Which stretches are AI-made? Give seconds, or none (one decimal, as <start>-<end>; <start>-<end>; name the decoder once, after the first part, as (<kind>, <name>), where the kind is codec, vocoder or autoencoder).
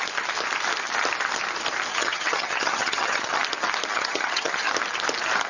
1.9-3.4 (vocoder, HiFi-GAN); 3.9-4.7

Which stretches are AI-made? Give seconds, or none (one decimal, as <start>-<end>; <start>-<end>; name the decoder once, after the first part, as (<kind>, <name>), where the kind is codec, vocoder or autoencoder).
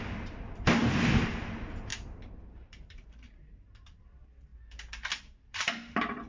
0.0-0.8 (vocoder, BigVGAN v2); 1.3-1.9; 2.5-4.5; 5.2-6.3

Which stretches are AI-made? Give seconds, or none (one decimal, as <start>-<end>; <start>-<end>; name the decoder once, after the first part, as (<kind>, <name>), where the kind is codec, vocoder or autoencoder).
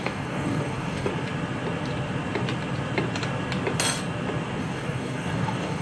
0.0-1.1 (codec, DAC); 4.6-5.8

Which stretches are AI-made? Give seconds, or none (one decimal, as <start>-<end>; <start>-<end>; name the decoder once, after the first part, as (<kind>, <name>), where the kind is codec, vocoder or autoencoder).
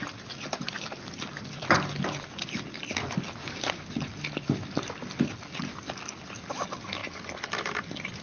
none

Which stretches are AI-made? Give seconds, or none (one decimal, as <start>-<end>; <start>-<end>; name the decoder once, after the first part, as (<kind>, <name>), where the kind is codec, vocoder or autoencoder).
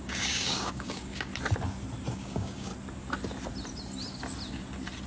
0.0-1.3 (codec, DAC); 2.1-2.7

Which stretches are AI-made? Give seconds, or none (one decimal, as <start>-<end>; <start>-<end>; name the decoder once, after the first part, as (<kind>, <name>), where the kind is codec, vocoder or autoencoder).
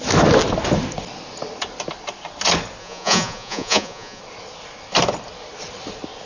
2.8-4.2 (vocoder, Vocos)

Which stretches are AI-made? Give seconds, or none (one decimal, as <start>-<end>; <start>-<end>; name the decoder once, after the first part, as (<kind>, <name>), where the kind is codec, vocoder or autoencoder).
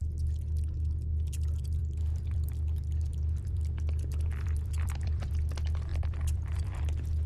1.8-5.3 (vocoder, BigVGAN v2); 5.9-6.8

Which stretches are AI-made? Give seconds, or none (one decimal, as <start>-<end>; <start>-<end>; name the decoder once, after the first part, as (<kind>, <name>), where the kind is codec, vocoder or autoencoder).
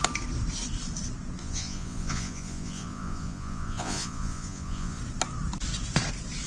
1.4-5.0 (vocoder, Vocos)